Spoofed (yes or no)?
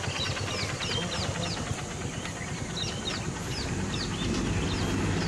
no